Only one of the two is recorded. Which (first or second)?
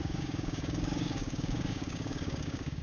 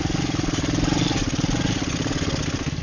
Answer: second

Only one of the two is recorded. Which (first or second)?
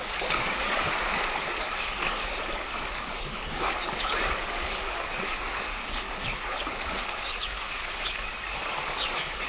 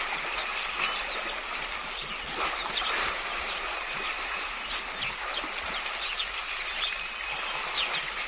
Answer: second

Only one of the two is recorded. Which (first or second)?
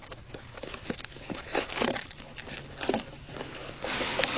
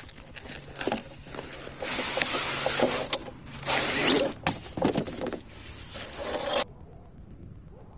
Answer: second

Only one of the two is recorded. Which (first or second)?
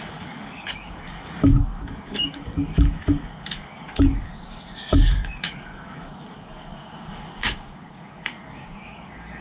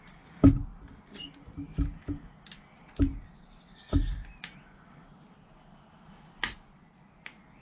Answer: second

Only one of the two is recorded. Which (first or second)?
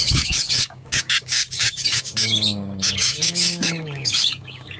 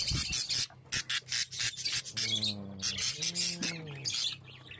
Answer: second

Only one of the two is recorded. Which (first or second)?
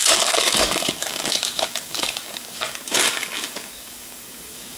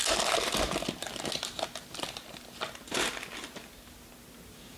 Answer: second